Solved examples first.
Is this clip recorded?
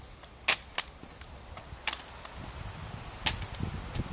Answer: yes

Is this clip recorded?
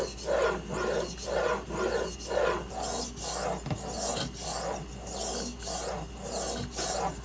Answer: yes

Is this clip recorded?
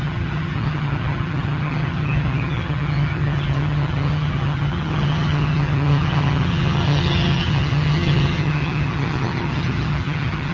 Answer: no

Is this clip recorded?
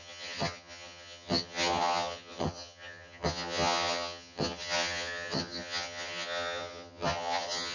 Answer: no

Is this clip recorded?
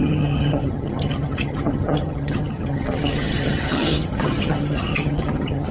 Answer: no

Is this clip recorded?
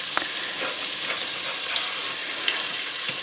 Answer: yes